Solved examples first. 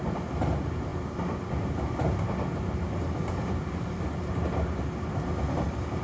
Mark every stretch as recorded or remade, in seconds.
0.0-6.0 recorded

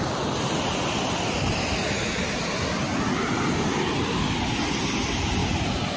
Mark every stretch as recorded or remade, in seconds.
0.0-6.0 recorded

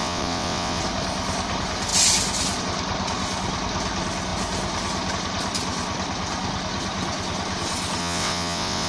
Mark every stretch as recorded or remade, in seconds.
0.0-0.8 remade; 0.8-8.0 recorded; 8.0-8.9 remade